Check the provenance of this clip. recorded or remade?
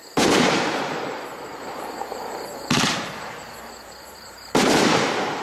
remade